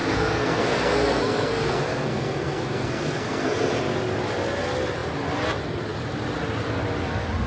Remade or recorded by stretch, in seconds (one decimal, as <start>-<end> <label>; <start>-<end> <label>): 0.0-3.7 remade; 3.7-7.5 recorded